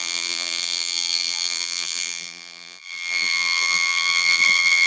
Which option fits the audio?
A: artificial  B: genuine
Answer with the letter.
A